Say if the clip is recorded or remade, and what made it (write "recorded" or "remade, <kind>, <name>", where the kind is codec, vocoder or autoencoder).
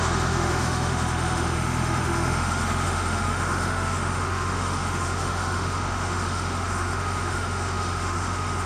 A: remade, autoencoder, DAC-VAE